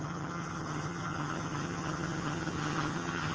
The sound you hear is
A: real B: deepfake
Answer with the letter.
B